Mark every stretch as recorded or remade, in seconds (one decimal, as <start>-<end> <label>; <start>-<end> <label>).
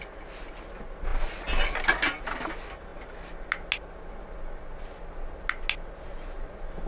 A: 0.0-6.9 recorded